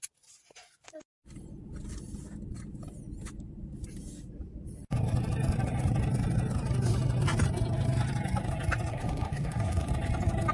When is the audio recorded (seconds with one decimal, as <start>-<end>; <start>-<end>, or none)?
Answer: 0.0-8.9; 9.9-10.5